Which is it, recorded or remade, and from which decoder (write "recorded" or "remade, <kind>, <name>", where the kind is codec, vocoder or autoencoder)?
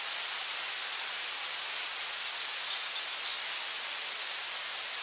recorded